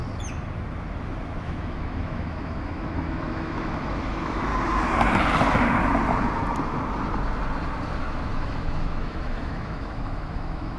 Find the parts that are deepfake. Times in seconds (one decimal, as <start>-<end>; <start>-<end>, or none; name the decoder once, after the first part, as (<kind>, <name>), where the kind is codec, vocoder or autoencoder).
1.4-4.5 (autoencoder, DAC-VAE); 8.0-10.8